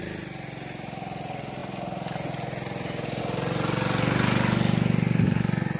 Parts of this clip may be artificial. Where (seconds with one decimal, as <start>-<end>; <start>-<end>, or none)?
none